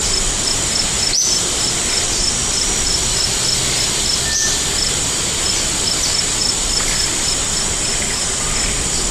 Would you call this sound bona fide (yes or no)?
yes